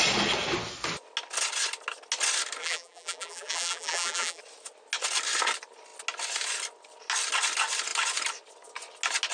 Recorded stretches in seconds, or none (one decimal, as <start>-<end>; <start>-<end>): 0.0-2.6; 4.4-9.3